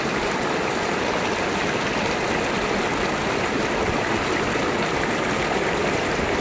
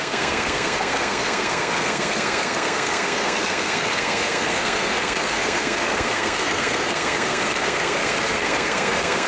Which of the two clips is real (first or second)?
first